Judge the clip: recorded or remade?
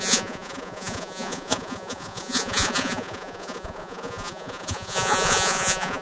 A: remade